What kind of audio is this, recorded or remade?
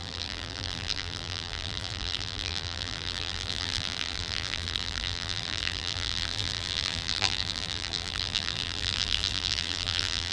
remade